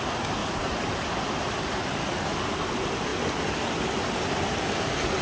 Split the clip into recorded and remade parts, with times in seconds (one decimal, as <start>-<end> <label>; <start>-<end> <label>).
0.0-0.4 recorded; 0.4-1.0 remade; 1.0-5.2 recorded